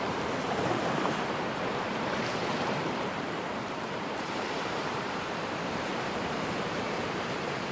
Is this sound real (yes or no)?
no